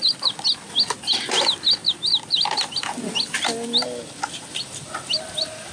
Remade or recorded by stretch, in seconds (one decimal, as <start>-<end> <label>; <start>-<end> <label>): 0.0-5.7 recorded

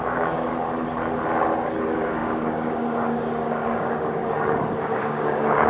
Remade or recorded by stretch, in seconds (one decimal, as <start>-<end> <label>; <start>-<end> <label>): 0.0-0.5 remade; 0.5-1.8 recorded; 1.8-4.2 remade; 4.2-4.8 recorded; 4.8-5.7 remade

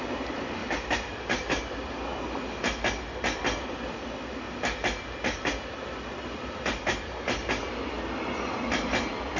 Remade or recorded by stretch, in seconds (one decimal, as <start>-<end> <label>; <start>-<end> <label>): 0.0-0.6 recorded; 0.6-1.6 remade; 1.6-9.4 recorded

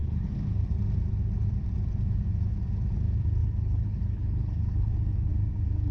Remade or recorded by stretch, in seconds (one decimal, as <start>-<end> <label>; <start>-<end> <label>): 0.0-0.8 remade; 0.8-3.4 recorded; 3.4-5.3 remade; 5.3-5.9 recorded

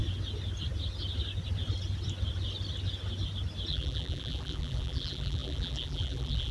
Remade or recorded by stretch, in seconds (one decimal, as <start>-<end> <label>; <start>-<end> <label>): 0.0-3.7 recorded; 3.7-6.5 remade

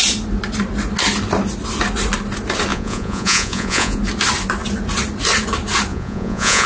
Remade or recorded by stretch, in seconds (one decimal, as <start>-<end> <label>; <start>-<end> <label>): 0.0-2.7 recorded; 2.7-4.0 remade; 4.0-5.9 recorded; 5.9-6.7 remade

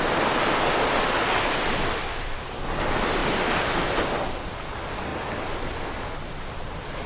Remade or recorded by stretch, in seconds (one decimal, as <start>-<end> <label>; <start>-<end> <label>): 0.0-7.1 recorded